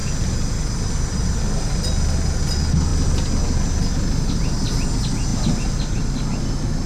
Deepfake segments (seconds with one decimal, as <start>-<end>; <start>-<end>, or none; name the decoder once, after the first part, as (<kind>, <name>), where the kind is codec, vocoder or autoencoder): none